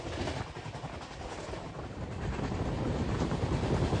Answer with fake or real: real